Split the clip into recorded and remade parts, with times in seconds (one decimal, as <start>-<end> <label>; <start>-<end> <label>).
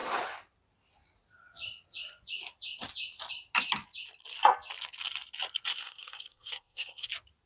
0.0-5.7 recorded; 5.7-7.1 remade; 7.1-7.5 recorded